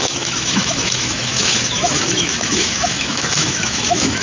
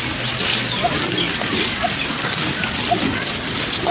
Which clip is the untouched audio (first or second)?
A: second